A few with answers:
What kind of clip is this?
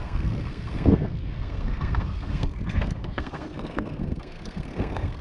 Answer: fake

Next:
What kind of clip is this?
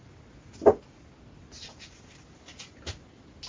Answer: real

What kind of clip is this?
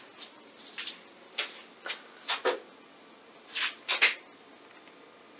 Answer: real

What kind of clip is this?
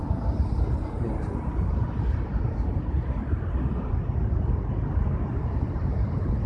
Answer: real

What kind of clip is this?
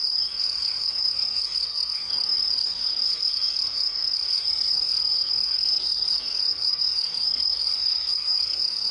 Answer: fake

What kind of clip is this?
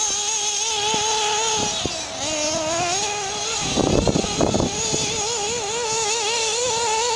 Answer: real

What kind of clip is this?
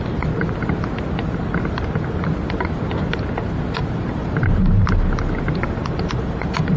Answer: real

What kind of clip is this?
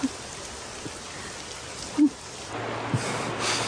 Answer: real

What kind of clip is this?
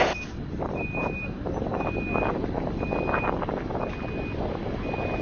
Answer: real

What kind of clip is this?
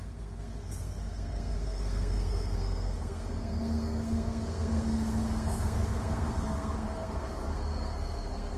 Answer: fake